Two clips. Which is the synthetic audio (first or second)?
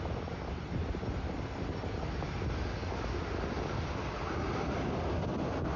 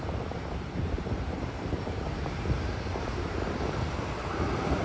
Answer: second